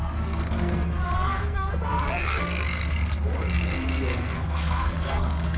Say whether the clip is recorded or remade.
remade